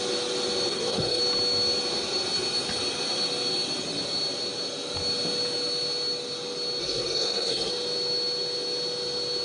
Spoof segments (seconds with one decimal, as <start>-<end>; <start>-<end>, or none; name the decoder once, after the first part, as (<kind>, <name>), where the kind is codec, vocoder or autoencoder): 0.7-1.2 (codec, SNAC); 6.8-7.7